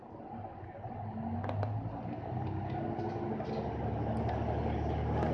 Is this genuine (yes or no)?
yes